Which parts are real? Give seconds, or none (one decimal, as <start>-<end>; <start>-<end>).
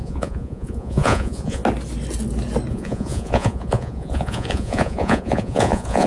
1.6-2.7